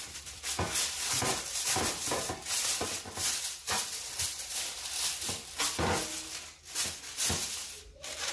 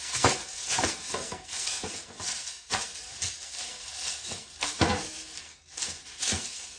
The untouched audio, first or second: first